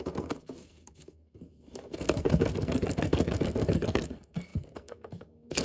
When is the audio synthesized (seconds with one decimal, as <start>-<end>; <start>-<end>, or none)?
0.0-5.6